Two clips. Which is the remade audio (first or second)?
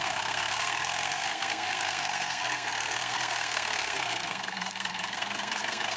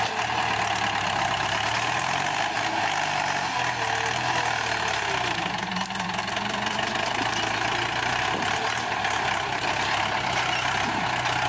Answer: first